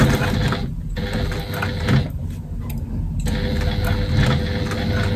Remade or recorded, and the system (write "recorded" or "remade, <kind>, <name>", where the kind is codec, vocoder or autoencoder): recorded